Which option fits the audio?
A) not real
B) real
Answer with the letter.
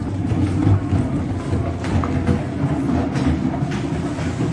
B